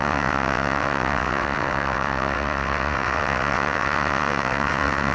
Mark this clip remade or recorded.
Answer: remade